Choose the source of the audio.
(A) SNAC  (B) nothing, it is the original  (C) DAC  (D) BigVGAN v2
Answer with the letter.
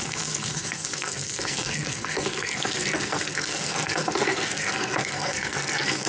A